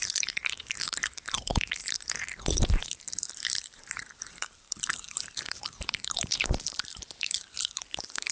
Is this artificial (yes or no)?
yes